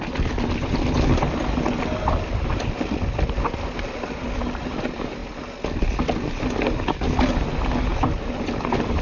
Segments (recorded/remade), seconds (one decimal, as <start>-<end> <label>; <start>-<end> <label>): 0.0-9.0 recorded